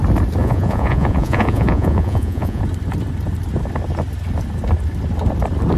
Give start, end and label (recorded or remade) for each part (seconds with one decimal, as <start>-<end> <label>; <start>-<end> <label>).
0.0-0.4 recorded; 0.4-2.6 remade; 2.6-5.8 recorded